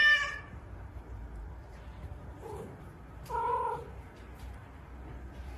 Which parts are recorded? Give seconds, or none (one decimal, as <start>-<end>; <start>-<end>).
2.8-5.6